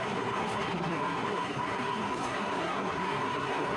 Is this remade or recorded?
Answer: remade